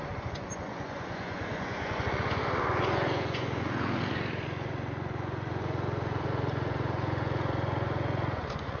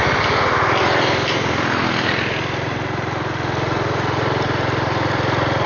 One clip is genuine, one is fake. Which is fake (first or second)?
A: first